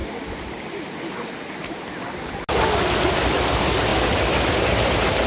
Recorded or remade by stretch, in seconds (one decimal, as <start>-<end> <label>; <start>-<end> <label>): 0.0-5.3 recorded